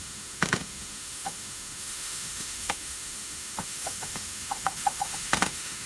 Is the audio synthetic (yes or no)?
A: yes